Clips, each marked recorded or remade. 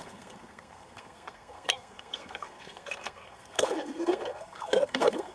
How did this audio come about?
remade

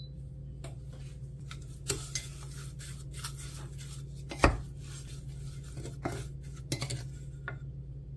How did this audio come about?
recorded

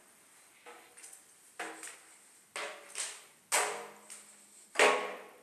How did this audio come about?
recorded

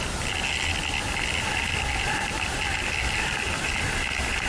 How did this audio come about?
recorded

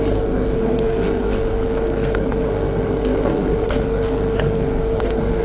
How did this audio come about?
remade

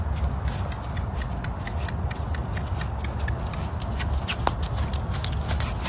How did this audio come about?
recorded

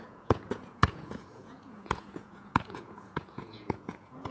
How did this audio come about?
remade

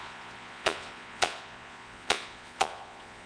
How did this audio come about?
remade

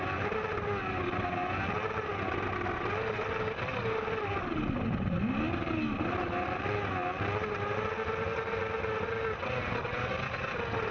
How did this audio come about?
recorded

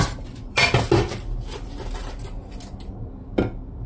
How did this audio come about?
recorded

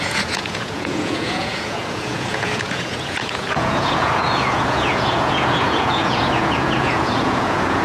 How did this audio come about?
remade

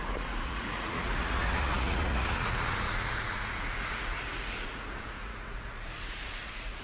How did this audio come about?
remade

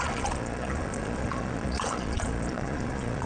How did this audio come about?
remade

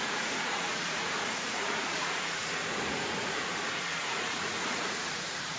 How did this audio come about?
remade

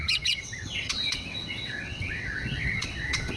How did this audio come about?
remade